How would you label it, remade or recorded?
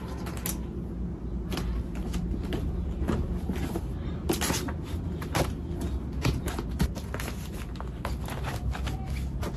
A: recorded